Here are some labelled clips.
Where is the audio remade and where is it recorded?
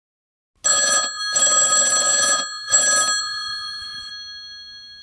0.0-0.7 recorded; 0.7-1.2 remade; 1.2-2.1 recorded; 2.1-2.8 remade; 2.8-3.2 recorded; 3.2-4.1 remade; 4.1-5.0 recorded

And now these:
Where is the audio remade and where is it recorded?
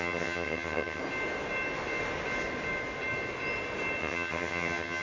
0.0-1.0 remade; 1.0-4.0 recorded; 4.0-5.0 remade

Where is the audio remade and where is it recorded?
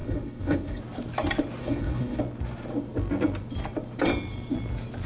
0.0-0.8 remade; 0.8-1.6 recorded; 1.6-2.2 remade; 2.2-5.1 recorded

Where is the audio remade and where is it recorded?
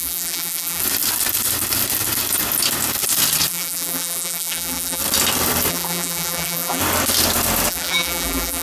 0.0-0.8 remade; 0.8-3.5 recorded; 3.5-5.0 remade; 5.0-5.7 recorded; 5.7-6.8 remade; 6.8-7.7 recorded; 7.7-8.6 remade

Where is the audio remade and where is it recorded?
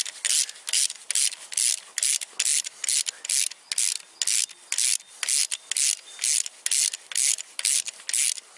0.0-8.6 recorded